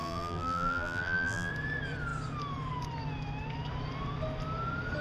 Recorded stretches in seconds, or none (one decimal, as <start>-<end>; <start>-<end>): 1.5-5.0